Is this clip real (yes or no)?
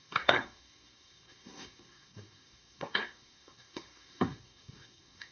no